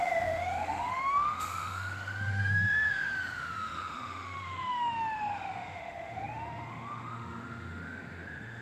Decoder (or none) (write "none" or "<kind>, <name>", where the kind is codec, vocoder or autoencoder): autoencoder, DAC-VAE